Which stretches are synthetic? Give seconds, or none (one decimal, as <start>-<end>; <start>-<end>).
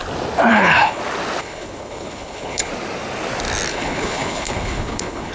0.5-1.0; 1.4-2.7; 3.7-5.3